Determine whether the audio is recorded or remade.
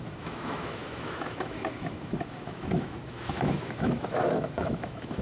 remade